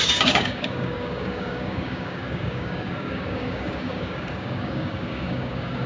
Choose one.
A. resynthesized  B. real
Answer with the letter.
A